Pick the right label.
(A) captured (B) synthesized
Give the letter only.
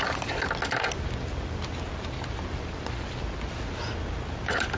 A